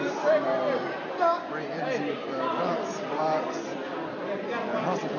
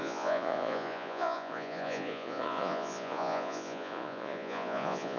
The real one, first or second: first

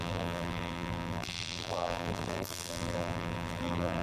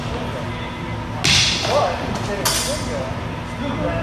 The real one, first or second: second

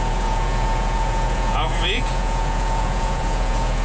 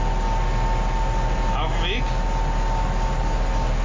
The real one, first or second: second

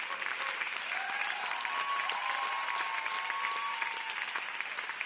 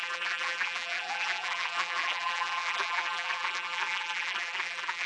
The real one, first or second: first